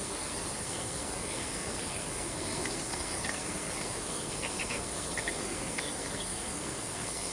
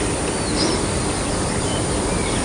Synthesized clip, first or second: first